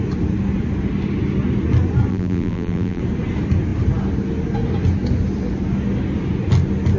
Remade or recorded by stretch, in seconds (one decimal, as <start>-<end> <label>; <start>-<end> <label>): 0.0-2.1 recorded; 2.1-3.0 remade; 3.0-7.0 recorded